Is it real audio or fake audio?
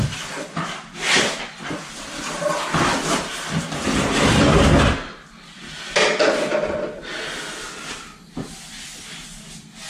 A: real